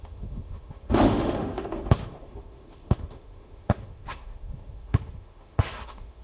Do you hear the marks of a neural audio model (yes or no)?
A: yes